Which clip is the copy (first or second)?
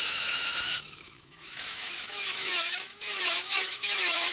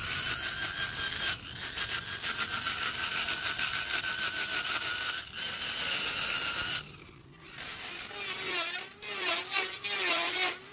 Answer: first